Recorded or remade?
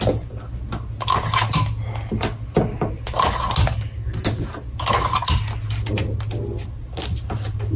recorded